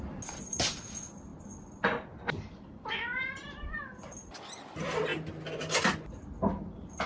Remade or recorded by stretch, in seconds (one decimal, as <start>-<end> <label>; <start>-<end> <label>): 0.0-7.1 recorded